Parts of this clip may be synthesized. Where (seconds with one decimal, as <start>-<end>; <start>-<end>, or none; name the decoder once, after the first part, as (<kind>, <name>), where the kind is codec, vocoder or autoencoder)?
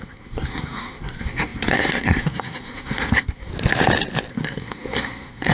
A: 0.0-3.5 (codec, SNAC); 4.3-5.5